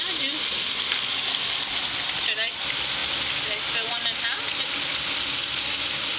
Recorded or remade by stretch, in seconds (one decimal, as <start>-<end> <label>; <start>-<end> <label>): 0.0-6.2 recorded